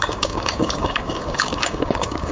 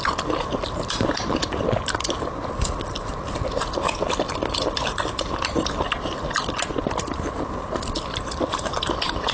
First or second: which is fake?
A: first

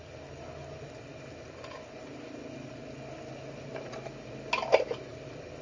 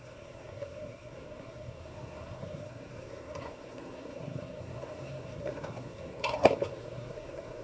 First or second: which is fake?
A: second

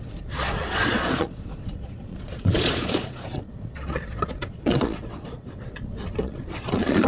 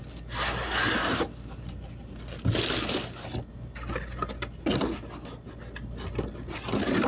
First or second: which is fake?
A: first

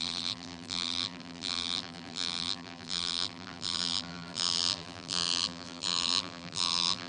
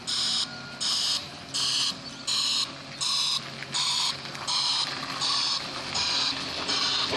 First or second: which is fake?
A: first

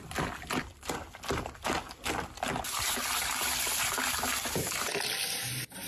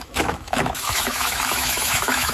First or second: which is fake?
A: second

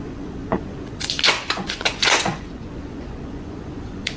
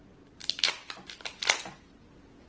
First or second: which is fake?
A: first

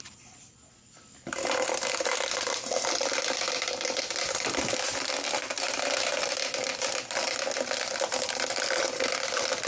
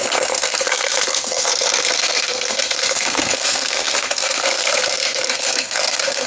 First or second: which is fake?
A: second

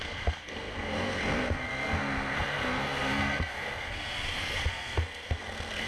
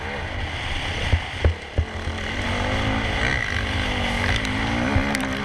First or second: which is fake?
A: first